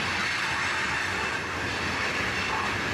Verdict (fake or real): real